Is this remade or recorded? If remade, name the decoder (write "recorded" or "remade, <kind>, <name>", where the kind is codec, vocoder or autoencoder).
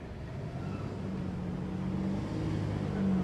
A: recorded